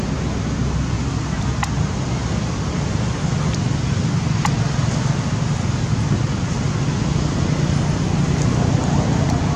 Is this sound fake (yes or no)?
no